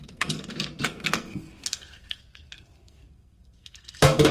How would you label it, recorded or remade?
remade